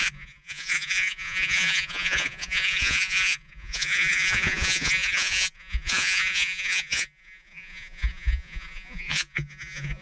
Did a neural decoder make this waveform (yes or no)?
yes